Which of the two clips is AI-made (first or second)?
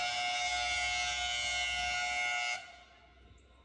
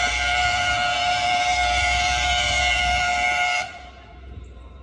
second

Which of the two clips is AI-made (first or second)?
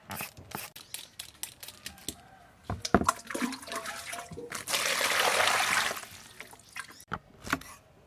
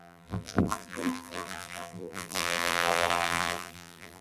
second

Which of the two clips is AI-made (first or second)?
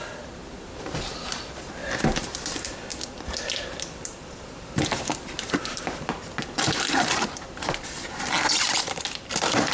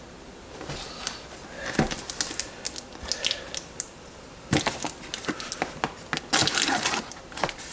first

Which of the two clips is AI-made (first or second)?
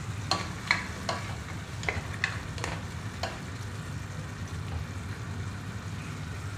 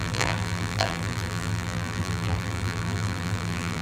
second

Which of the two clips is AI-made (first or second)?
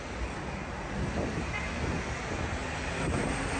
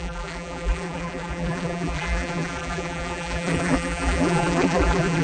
second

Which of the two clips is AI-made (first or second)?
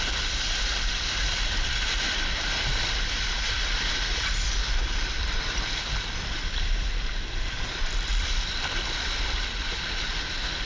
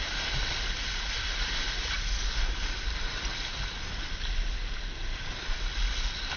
first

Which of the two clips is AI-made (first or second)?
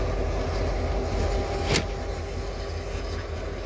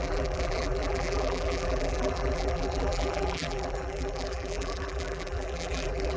second